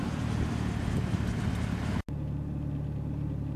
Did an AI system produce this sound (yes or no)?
no